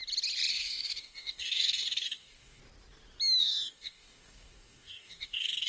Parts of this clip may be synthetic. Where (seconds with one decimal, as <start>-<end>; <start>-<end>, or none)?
0.5-2.6; 3.4-5.7